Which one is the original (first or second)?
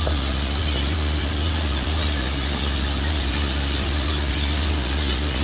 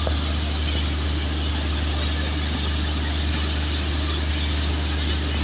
second